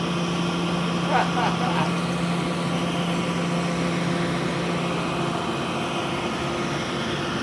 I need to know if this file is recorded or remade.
recorded